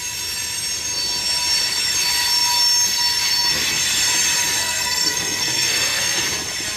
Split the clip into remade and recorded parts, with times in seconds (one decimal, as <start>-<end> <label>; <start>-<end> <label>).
0.0-4.6 recorded; 4.6-6.2 remade; 6.2-6.8 recorded